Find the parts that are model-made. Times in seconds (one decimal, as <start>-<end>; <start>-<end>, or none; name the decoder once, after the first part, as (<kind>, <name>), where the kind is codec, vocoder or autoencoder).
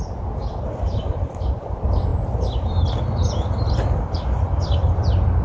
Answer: none